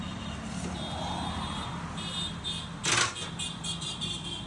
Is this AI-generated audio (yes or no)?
no